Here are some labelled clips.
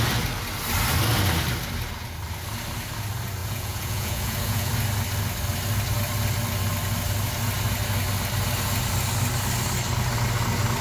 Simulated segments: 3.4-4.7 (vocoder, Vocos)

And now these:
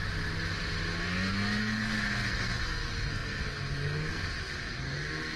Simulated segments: 1.6-5.4 (codec, SNAC)

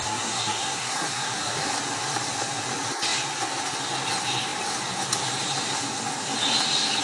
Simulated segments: 0.0-1.7 (codec, SNAC)